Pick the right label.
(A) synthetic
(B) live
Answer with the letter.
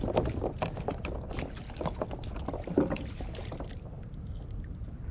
B